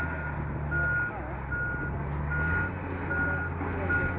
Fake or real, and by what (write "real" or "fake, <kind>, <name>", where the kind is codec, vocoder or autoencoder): real